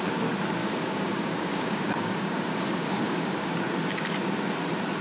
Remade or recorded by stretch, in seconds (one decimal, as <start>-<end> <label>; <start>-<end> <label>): 0.0-0.6 recorded; 0.6-3.6 remade; 3.6-5.0 recorded